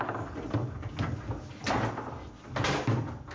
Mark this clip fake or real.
real